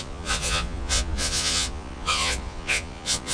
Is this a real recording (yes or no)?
no